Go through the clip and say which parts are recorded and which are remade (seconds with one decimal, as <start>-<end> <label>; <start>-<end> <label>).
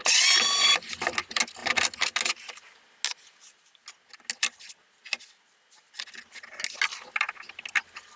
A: 0.0-8.2 recorded